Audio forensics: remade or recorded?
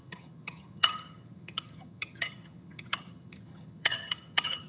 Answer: remade